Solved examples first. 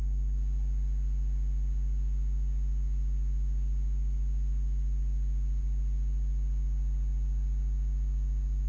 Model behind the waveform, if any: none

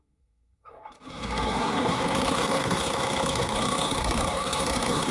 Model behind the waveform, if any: codec, SNAC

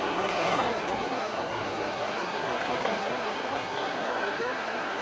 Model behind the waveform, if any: codec, SNAC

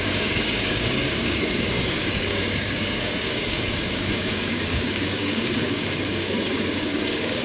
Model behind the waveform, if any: codec, DAC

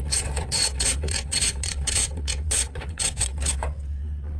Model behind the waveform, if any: vocoder, WaveNeXt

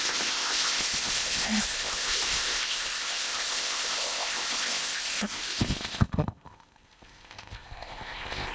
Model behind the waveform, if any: codec, ZipCodec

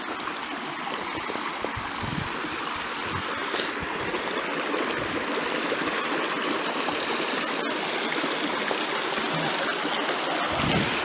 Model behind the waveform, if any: none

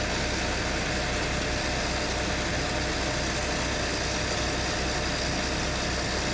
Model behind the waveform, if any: none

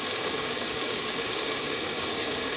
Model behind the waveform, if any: codec, DAC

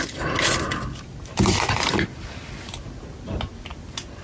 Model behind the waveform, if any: none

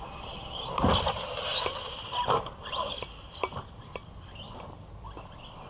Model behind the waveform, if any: none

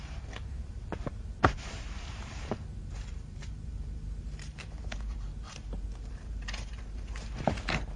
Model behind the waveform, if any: vocoder, BigVGAN v2